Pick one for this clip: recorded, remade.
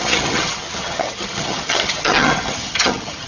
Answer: remade